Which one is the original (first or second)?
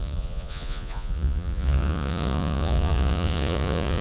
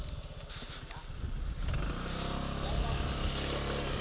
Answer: second